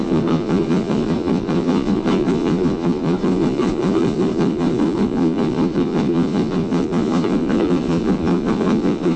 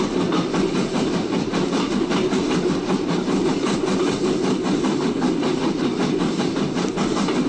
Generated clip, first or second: first